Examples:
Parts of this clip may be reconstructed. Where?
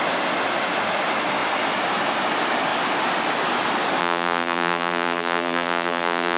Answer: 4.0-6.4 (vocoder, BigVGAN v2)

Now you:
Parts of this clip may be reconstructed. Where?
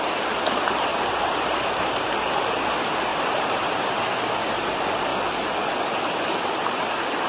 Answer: 0.9-2.6 (vocoder, BigVGAN v2); 3.1-3.7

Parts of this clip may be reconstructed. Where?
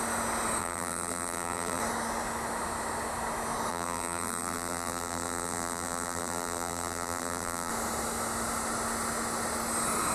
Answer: 0.6-1.8 (vocoder, BigVGAN v2); 3.7-7.7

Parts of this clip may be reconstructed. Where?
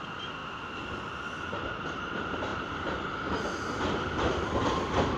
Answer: 2.5-4.5 (vocoder, BigVGAN v2)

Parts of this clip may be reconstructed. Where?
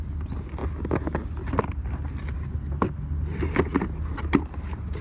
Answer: none